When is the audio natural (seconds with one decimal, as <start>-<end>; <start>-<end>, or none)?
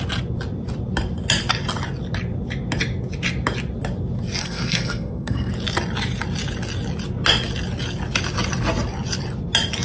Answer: 0.0-4.4; 5.5-9.8